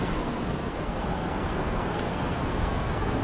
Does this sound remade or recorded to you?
remade